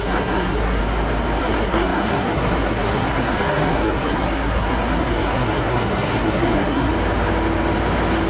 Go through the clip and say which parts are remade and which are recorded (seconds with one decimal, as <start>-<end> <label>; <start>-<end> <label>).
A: 0.0-0.8 remade; 0.8-1.4 recorded; 1.4-6.9 remade; 6.9-8.3 recorded